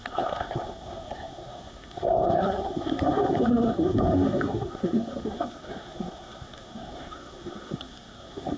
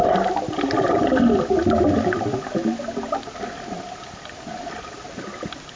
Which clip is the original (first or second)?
second